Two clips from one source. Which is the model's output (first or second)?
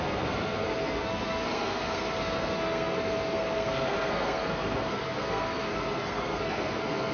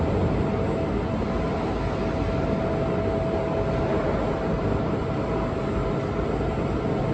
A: first